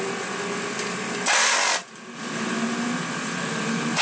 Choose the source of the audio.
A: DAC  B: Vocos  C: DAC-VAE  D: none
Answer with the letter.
D